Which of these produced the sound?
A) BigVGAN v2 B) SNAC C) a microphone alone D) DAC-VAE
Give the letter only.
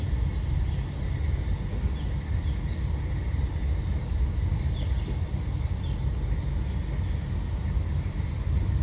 C